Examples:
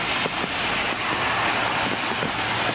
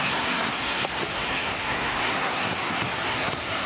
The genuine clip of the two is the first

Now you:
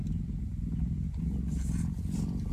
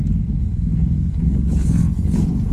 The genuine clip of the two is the first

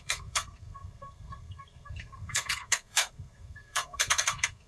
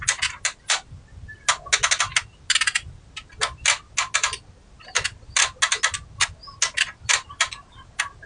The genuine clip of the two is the second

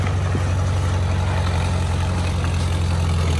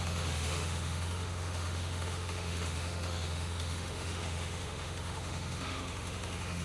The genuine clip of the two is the first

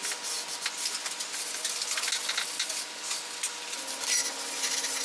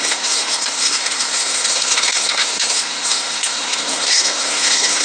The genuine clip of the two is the first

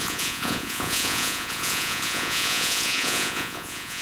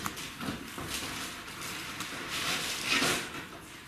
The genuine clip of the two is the second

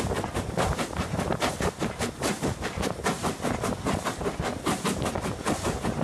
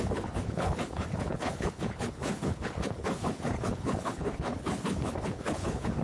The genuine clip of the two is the first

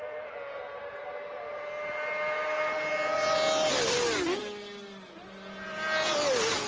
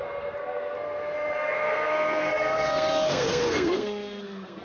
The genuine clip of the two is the first